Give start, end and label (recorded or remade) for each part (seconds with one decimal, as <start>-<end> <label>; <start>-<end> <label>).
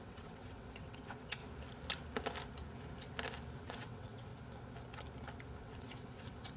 0.0-1.4 remade; 1.4-3.6 recorded; 3.6-4.3 remade; 4.3-5.6 recorded; 5.6-6.6 remade